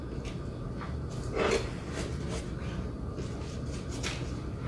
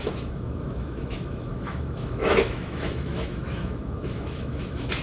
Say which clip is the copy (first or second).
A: second